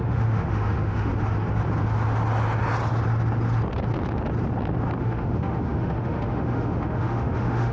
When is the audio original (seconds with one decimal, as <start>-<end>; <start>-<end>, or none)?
1.1-5.0